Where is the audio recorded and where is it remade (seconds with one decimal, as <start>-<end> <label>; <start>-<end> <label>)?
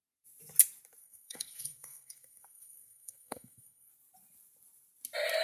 0.0-1.0 recorded; 1.0-3.9 remade; 3.9-5.4 recorded